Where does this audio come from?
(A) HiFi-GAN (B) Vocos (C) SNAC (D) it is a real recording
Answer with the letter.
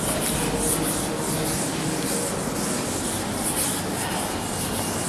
D